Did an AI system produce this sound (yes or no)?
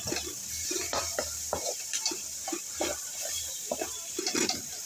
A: yes